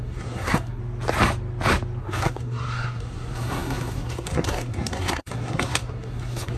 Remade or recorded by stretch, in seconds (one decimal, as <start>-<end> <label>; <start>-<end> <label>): 0.0-0.8 remade; 0.8-2.0 recorded; 2.0-6.6 remade